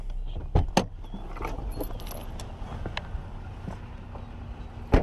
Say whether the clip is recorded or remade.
recorded